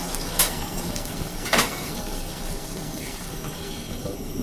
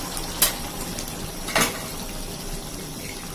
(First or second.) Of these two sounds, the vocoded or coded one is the first